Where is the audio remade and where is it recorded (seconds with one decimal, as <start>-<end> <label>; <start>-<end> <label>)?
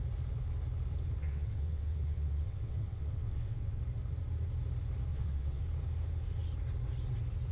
0.0-1.2 recorded; 1.2-3.8 remade; 3.8-5.1 recorded; 5.1-5.6 remade; 5.6-7.5 recorded